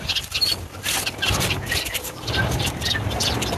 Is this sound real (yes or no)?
no